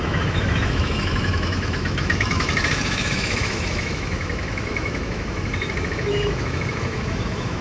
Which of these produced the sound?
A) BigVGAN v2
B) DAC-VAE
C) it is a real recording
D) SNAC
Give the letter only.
B